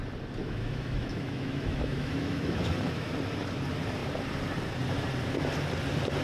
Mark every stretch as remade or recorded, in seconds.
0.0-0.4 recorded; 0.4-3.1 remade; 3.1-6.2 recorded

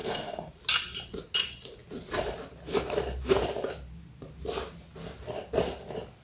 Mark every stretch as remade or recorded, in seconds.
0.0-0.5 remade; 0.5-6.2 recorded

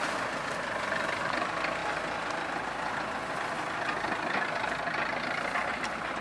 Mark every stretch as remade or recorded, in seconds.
0.0-6.2 recorded